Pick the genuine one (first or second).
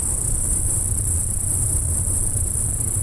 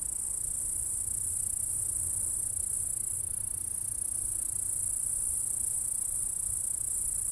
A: second